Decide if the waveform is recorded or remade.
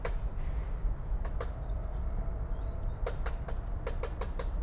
recorded